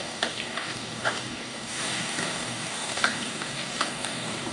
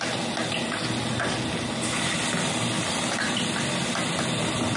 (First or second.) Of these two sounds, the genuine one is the second